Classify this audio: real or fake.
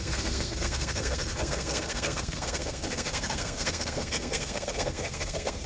fake